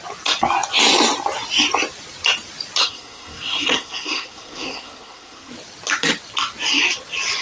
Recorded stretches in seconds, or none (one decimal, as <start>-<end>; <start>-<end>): 0.0-2.8; 5.5-7.4